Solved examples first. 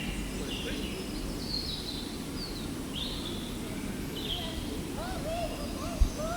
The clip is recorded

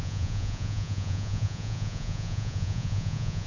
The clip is remade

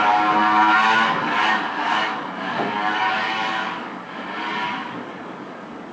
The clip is remade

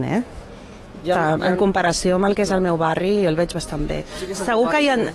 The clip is remade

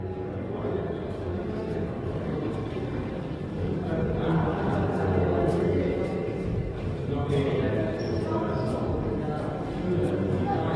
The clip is remade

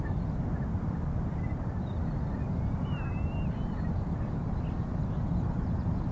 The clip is recorded